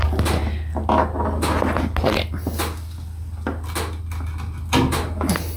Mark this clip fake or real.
real